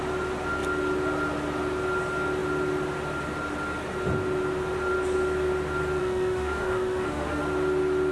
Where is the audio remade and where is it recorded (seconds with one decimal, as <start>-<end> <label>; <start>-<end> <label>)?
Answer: 0.0-6.0 recorded; 6.0-7.4 remade; 7.4-8.1 recorded